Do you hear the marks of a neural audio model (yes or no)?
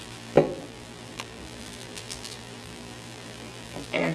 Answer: yes